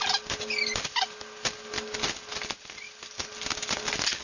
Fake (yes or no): no